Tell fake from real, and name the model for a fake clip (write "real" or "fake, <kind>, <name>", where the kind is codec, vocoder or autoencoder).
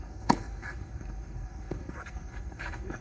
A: fake, codec, SNAC